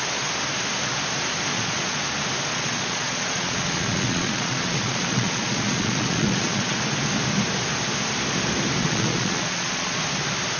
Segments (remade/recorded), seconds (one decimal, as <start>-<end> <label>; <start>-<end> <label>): 0.0-1.5 recorded; 1.5-2.0 remade; 2.0-2.5 recorded; 2.5-6.8 remade; 6.8-8.8 recorded; 8.8-10.0 remade; 10.0-10.6 recorded